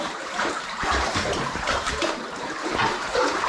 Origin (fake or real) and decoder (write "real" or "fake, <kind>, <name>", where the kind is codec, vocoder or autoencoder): fake, vocoder, BigVGAN v2